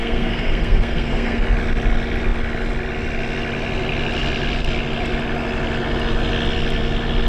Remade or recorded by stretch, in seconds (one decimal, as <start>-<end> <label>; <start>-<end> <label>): 0.0-1.4 remade; 1.4-7.3 recorded